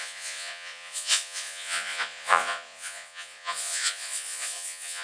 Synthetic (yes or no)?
yes